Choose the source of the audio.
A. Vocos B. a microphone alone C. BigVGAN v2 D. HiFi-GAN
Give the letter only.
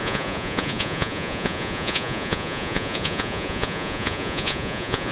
A